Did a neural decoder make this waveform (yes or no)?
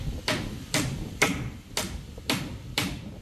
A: no